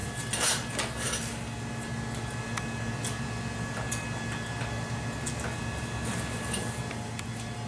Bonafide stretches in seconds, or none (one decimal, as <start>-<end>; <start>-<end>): 0.0-7.7